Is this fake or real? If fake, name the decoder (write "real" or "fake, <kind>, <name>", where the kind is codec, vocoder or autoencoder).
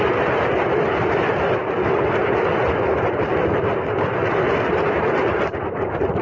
real